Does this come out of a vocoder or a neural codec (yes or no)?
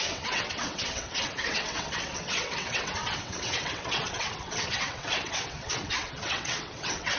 yes